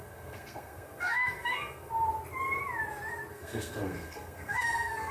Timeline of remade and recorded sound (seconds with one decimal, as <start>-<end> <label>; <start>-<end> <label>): 0.0-1.9 remade; 1.9-3.3 recorded; 3.3-5.1 remade